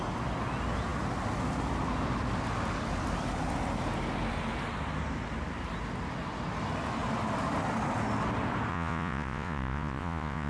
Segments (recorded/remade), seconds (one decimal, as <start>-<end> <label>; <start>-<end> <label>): 0.0-8.7 recorded; 8.7-10.5 remade